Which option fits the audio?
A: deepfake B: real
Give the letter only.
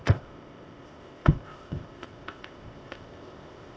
A